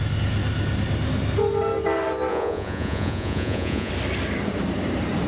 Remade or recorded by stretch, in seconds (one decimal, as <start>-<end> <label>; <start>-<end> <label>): 0.0-2.3 recorded; 2.3-3.9 remade; 3.9-5.3 recorded